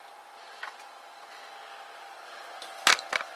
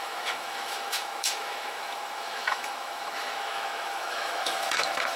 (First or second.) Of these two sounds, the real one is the first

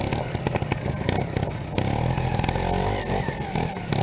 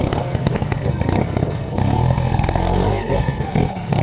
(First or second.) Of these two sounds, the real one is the first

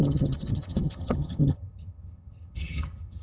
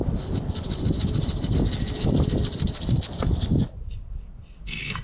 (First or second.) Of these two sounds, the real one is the second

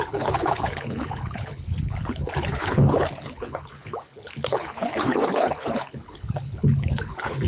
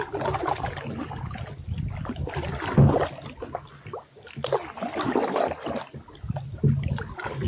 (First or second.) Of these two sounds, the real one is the second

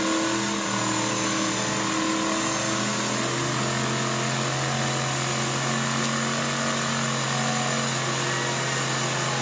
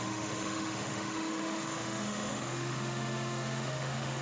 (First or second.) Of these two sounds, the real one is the first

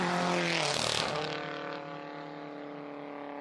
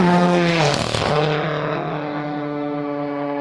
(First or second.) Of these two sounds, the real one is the first